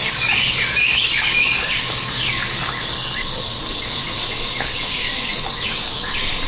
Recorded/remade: remade